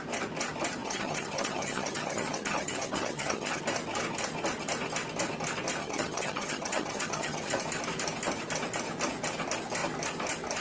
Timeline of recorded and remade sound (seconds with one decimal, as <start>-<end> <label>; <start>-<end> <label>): 0.0-0.8 recorded; 0.8-3.6 remade; 3.6-5.8 recorded; 5.8-7.6 remade; 7.6-10.6 recorded